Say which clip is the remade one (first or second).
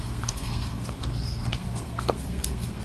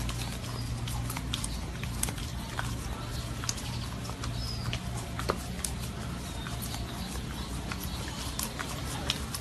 first